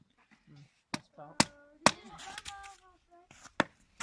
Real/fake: real